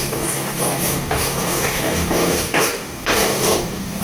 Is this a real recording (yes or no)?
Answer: no